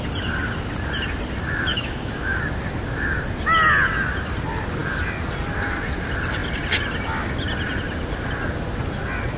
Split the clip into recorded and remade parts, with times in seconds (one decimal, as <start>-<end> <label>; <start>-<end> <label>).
0.0-1.7 recorded; 1.7-2.4 remade; 2.4-9.4 recorded